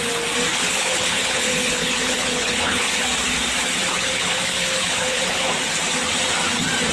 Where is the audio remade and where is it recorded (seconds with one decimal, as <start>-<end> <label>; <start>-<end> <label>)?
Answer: 0.0-0.5 recorded; 0.5-3.0 remade; 3.0-3.9 recorded; 3.9-5.5 remade; 5.5-6.9 recorded